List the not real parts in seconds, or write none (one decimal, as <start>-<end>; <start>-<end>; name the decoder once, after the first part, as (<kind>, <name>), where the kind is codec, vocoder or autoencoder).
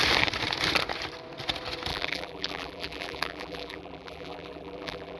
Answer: 1.9-5.2 (vocoder, BigVGAN v2)